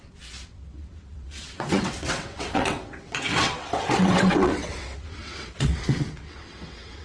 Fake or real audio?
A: fake